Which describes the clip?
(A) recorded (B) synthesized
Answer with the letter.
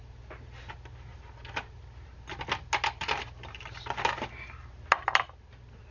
A